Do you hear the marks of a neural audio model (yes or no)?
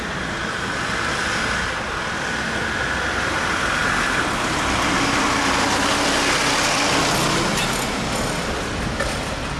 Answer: no